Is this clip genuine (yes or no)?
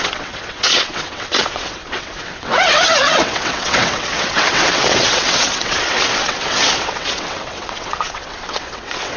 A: no